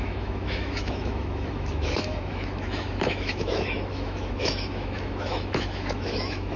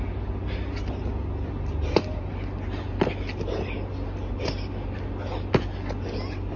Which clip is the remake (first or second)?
first